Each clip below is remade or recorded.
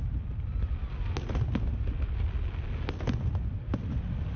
recorded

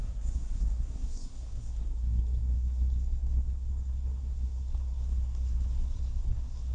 remade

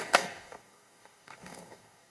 remade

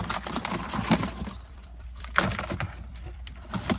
remade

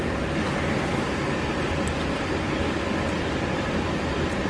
recorded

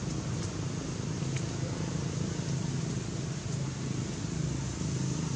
recorded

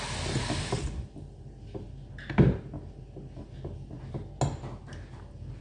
recorded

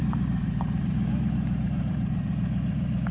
remade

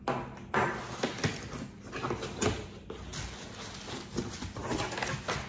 recorded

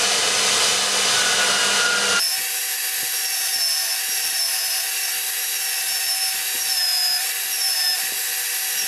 recorded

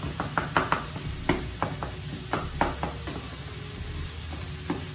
recorded